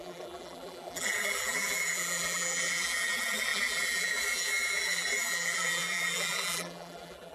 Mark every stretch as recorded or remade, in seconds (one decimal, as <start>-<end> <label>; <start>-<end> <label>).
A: 0.0-7.3 remade